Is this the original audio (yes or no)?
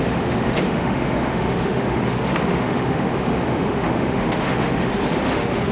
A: no